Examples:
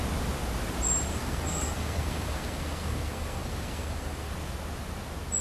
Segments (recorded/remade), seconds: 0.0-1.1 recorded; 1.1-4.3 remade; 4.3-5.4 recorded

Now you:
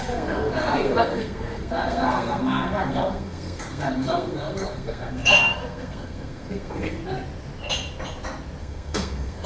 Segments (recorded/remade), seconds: 0.0-7.0 remade; 7.0-8.6 recorded; 8.6-9.5 remade

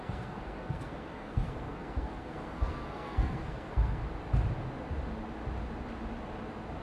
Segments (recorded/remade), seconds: 0.0-4.0 remade; 4.0-6.8 recorded

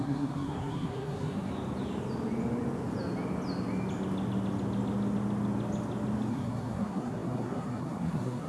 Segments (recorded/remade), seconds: 0.0-1.5 remade; 1.5-6.3 recorded; 6.3-8.5 remade

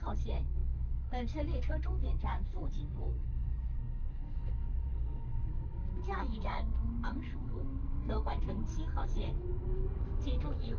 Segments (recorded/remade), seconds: 0.0-10.8 remade

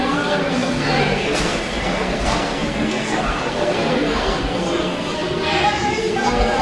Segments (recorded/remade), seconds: 0.0-6.6 remade